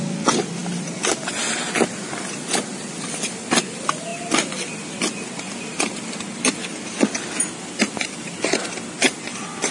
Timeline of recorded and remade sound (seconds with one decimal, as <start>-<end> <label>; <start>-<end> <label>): 0.0-9.7 recorded